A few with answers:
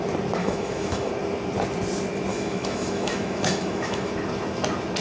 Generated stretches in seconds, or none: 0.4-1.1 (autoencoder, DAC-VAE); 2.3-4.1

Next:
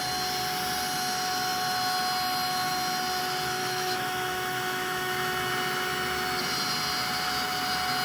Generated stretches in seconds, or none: 3.6-5.5 (autoencoder, DAC-VAE)

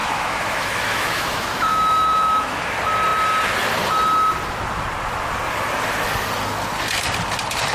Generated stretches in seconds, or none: 0.0-2.7 (autoencoder, DAC-VAE)

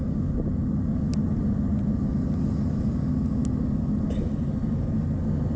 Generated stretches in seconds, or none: none

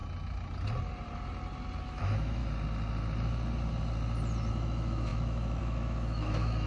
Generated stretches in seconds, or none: 1.8-2.4 (autoencoder, DAC-VAE); 4.5-6.7

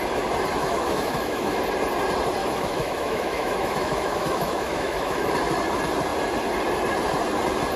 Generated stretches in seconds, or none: 0.6-1.6 (autoencoder, DAC-VAE); 2.4-5.3

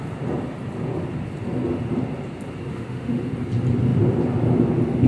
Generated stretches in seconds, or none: 2.7-3.2 (autoencoder, DAC-VAE)